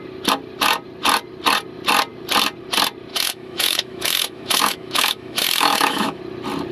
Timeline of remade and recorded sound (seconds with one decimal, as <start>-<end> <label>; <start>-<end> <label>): 0.0-3.1 recorded; 3.1-6.2 remade; 6.2-6.7 recorded